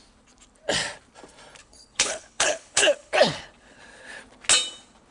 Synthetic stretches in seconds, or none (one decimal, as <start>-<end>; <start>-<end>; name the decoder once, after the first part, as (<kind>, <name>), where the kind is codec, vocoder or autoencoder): 1.6-3.8 (codec, HILCodec)